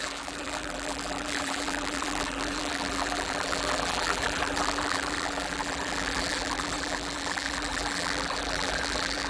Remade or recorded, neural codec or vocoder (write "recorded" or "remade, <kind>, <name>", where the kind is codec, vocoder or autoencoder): remade, vocoder, BigVGAN v2